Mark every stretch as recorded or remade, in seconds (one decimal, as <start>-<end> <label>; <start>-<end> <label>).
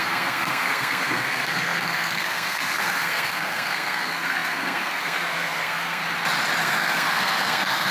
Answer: 0.0-6.0 remade; 6.0-6.6 recorded; 6.6-7.9 remade